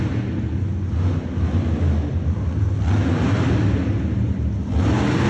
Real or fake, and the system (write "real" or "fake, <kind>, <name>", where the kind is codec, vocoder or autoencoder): real